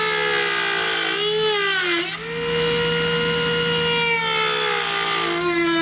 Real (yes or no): yes